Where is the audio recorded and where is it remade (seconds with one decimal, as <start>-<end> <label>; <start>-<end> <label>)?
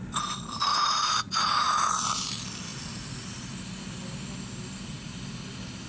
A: 0.0-0.7 recorded; 0.7-1.9 remade; 1.9-5.9 recorded